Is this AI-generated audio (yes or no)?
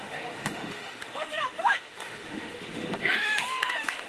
yes